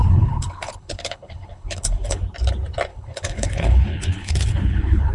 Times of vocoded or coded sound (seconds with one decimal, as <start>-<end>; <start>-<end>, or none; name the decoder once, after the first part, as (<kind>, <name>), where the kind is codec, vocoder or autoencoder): 0.0-2.2 (codec, HILCodec); 2.9-5.1